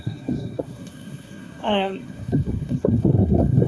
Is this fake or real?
fake